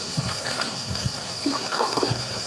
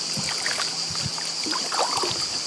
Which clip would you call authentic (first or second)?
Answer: second